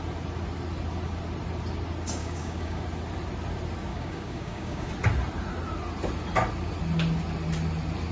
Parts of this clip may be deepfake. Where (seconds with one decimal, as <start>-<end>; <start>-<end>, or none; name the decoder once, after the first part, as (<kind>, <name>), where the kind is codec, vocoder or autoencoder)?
2.2-2.8 (codec, DAC); 3.9-4.9